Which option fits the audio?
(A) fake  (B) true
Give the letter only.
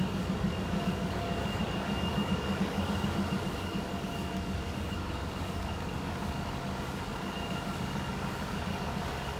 A